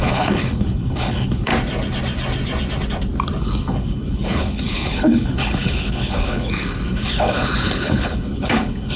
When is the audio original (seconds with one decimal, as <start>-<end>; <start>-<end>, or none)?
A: 1.5-3.4